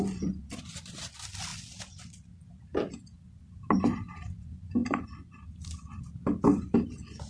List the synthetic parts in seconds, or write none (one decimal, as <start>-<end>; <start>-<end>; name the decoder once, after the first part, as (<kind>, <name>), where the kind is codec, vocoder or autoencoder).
none